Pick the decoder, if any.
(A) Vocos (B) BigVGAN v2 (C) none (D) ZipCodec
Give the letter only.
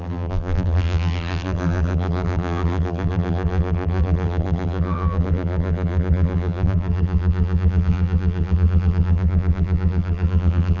B